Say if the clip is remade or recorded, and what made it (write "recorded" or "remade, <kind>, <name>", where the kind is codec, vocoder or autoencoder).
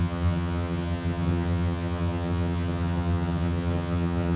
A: remade, vocoder, HiFi-GAN